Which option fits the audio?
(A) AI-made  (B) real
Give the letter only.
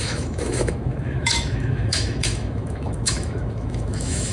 A